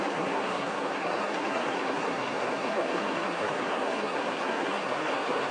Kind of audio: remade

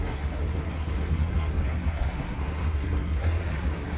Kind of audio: remade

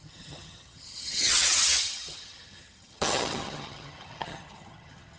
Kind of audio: remade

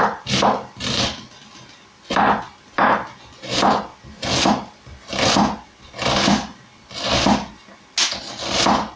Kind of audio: recorded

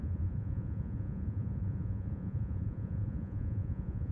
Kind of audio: remade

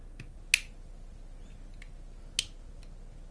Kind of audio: recorded